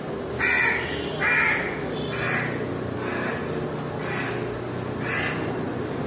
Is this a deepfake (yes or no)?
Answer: no